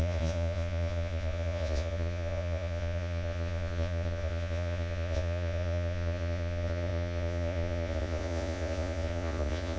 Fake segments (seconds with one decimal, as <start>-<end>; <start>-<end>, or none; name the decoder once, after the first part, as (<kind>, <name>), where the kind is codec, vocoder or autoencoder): 0.0-9.8 (vocoder, Vocos)

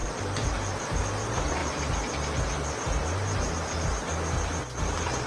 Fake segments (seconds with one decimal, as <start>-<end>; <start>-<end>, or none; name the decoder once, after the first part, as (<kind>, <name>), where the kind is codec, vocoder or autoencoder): 0.0-1.0 (vocoder, BigVGAN v2)